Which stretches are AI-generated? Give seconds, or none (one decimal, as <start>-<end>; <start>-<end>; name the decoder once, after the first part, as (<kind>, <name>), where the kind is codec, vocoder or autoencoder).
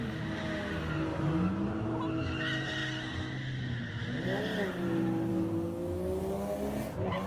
1.1-1.7 (codec, DAC); 5.3-6.2